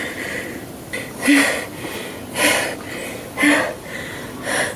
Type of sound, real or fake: real